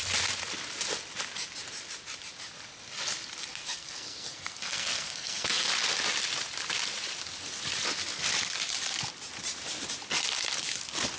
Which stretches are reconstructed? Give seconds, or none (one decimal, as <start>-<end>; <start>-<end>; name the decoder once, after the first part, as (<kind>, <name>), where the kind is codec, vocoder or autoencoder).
3.5-5.7 (codec, SNAC)